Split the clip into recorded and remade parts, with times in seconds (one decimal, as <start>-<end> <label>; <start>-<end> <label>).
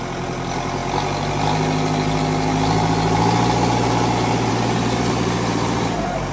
0.0-6.3 recorded